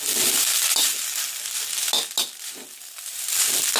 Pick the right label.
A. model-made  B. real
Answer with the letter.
B